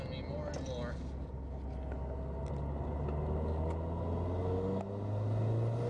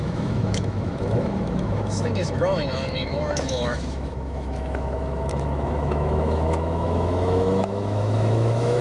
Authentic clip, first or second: first